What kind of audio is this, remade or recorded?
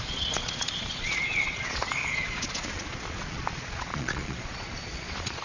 remade